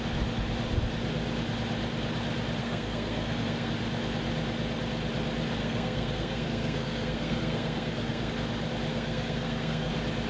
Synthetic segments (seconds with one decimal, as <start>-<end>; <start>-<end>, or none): 2.6-3.7; 5.6-8.3; 8.9-9.9